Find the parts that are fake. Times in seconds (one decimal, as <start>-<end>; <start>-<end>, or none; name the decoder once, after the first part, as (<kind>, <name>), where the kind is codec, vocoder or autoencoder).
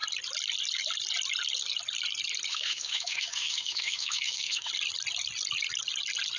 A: 2.5-4.7 (autoencoder, DAC-VAE)